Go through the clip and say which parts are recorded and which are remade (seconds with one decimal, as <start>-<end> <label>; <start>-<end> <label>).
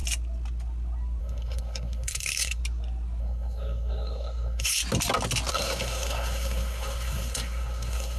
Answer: 0.0-1.2 recorded; 1.2-2.6 remade; 2.6-3.2 recorded; 3.2-4.8 remade; 4.8-5.5 recorded; 5.5-8.2 remade